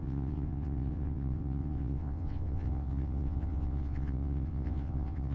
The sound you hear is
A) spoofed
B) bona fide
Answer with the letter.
A